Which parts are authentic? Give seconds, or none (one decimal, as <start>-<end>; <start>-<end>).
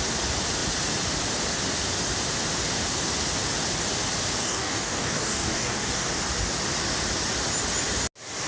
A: 0.0-4.4; 6.1-8.5